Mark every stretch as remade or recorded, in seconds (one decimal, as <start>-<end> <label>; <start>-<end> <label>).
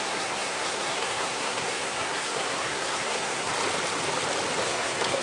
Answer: 0.0-3.5 remade; 3.5-4.6 recorded; 4.6-5.2 remade